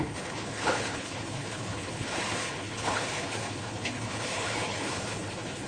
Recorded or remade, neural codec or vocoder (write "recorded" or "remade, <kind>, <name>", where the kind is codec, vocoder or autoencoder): remade, codec, HILCodec